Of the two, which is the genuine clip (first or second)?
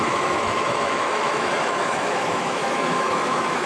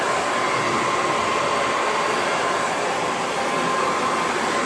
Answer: second